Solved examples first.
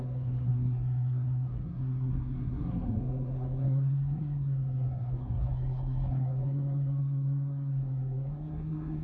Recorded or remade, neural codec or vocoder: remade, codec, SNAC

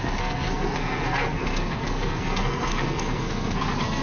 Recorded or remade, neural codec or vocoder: remade, codec, SNAC